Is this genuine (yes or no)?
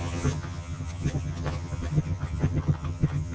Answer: no